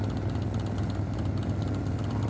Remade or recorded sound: recorded